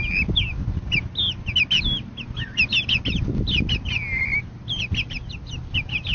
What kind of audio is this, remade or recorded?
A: recorded